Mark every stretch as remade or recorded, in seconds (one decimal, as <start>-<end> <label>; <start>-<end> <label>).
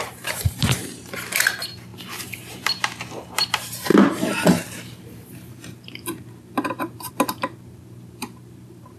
0.0-9.0 remade